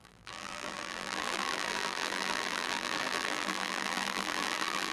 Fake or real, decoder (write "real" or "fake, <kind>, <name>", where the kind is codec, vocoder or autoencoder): fake, vocoder, BigVGAN v2